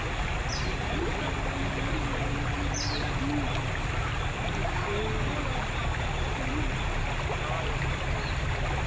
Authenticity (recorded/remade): recorded